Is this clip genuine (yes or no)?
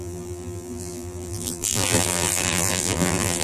no